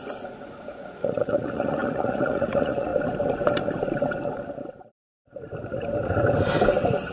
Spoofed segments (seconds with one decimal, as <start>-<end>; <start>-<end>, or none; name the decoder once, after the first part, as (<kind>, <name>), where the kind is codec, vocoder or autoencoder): 0.0-2.9 (vocoder, Vocos)